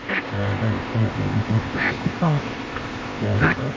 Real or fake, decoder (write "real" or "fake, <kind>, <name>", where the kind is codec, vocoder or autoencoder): fake, codec, ZipCodec